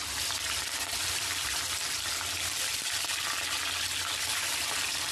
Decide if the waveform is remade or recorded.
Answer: recorded